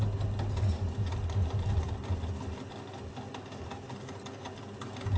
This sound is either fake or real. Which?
real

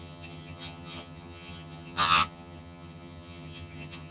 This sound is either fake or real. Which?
fake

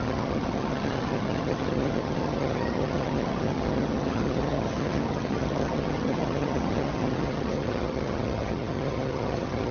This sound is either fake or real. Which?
fake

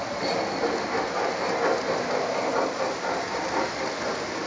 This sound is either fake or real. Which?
real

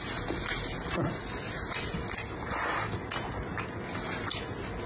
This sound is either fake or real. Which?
real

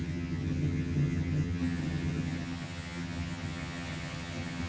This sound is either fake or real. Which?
fake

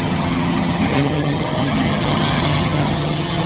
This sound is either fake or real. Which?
fake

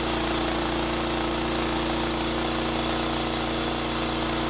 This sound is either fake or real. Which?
real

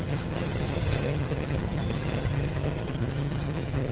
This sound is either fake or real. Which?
fake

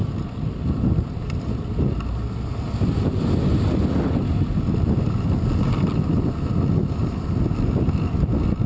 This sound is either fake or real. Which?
real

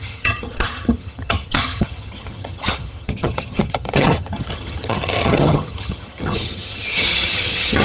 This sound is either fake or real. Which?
fake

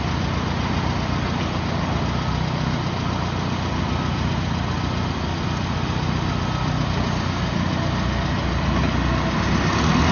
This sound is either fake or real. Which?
real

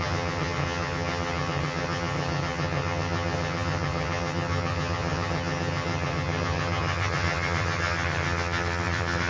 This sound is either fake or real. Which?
fake